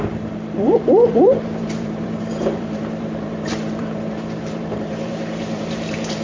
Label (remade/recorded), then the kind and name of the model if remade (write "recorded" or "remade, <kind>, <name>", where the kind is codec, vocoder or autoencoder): remade, vocoder, BigVGAN v2